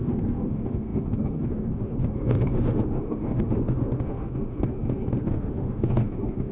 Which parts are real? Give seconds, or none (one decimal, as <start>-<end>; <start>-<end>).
none